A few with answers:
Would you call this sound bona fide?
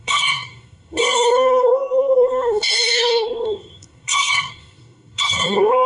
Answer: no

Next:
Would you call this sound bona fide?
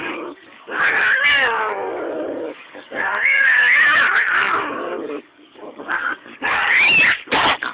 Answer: no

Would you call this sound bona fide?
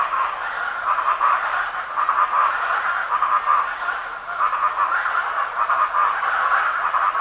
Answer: yes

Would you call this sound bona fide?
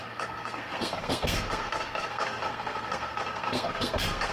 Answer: no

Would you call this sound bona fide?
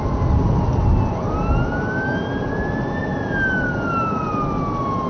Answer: yes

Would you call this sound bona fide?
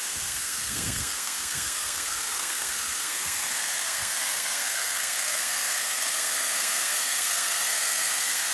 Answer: no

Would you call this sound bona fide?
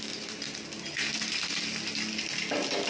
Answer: yes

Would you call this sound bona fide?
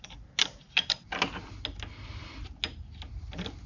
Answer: yes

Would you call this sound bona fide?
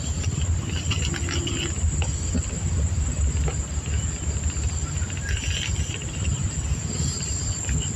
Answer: yes